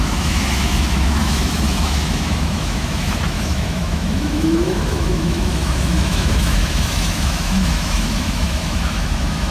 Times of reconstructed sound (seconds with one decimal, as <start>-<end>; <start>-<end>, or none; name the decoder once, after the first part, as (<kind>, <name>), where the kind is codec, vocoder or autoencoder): 0.0-9.5 (autoencoder, DAC-VAE)